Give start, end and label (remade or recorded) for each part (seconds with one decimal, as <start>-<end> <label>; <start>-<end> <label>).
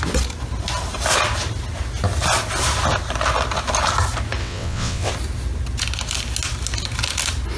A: 0.0-4.4 recorded; 4.4-5.1 remade; 5.1-7.6 recorded